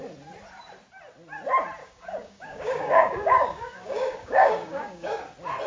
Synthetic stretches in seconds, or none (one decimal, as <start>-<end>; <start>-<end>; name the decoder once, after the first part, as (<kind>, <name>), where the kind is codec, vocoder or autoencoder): 1.8-5.2 (codec, DAC)